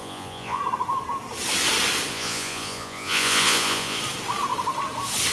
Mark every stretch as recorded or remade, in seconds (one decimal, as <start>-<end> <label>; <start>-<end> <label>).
0.0-0.6 remade; 0.6-2.1 recorded; 2.1-4.0 remade; 4.0-5.3 recorded